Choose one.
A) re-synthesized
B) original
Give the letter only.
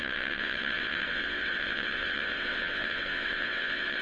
A